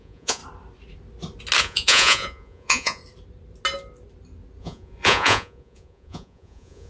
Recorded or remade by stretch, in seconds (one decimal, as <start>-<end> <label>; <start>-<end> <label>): 0.0-0.4 remade; 0.4-1.6 recorded; 1.6-3.0 remade; 3.0-4.6 recorded; 4.6-6.9 remade